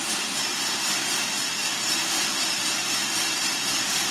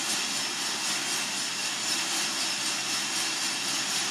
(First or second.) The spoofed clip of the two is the first